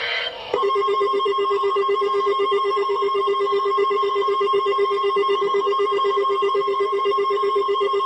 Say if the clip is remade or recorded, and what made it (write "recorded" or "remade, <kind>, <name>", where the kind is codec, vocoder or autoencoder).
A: remade, codec, SNAC